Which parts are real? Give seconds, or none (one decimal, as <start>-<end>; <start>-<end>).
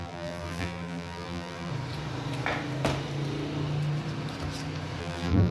1.7-5.0